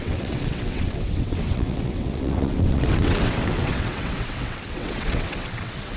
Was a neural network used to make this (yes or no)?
yes